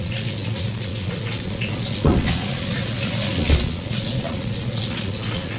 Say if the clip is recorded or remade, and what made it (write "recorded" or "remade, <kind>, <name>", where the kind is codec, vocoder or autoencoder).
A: remade, vocoder, Vocos